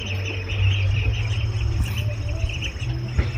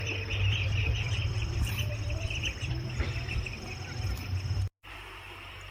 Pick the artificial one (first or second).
second